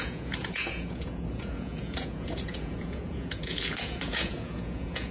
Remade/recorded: remade